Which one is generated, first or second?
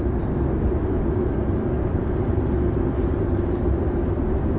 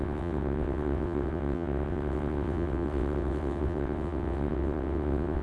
second